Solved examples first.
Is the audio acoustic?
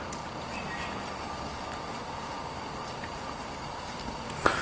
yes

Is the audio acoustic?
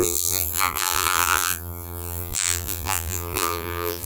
no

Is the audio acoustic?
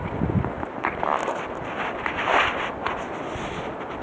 no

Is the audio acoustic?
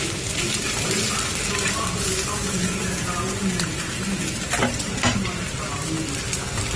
yes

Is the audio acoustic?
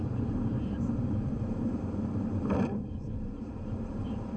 no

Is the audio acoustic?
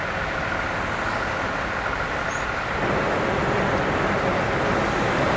yes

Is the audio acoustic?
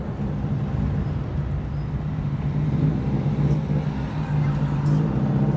yes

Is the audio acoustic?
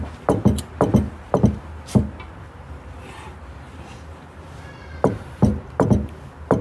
yes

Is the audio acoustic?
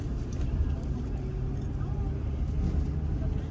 yes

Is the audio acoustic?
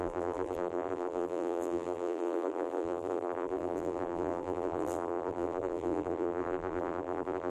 no